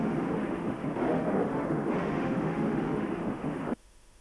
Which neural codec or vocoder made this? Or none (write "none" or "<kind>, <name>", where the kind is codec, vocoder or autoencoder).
autoencoder, DAC-VAE